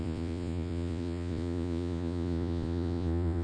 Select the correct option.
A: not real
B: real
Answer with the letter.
A